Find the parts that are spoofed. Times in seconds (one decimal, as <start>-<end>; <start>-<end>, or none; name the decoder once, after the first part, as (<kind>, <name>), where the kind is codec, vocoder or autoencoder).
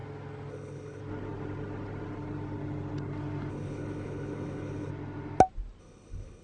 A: 0.5-1.0 (codec, HILCodec); 3.5-4.9; 5.8-6.4